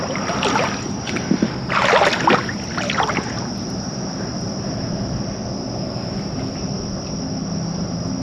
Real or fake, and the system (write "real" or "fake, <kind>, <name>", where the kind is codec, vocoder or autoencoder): real